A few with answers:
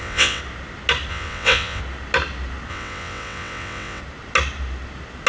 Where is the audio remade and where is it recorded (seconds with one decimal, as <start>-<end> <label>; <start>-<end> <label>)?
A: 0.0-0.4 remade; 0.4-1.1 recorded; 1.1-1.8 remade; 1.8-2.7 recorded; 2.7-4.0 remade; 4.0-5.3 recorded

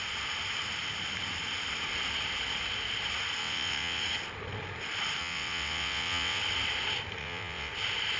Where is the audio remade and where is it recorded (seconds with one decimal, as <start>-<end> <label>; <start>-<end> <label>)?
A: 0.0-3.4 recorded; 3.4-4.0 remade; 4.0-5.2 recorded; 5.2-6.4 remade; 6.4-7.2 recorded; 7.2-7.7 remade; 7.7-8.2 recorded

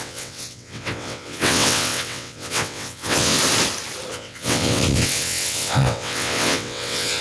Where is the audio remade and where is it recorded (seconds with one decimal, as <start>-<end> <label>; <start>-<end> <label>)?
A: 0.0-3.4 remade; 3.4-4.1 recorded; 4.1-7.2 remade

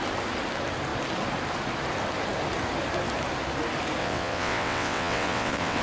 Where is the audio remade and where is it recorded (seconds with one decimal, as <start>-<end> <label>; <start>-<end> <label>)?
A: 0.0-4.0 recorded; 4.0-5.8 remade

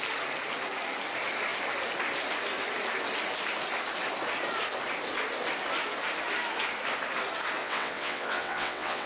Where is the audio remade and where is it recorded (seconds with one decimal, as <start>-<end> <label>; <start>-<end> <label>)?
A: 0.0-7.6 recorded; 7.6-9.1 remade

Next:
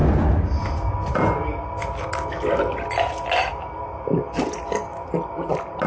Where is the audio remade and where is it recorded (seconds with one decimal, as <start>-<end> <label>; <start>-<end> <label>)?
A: 0.0-5.9 recorded